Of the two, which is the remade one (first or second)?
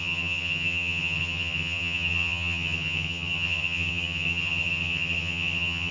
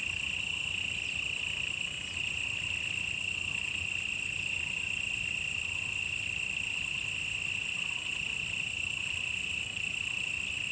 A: first